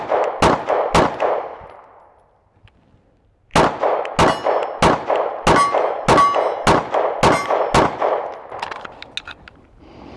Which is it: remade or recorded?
recorded